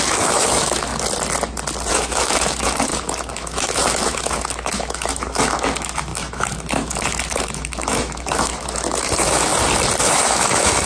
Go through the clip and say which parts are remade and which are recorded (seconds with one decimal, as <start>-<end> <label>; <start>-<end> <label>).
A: 0.0-0.9 remade; 0.9-1.9 recorded; 1.9-9.5 remade; 9.5-10.0 recorded; 10.0-10.9 remade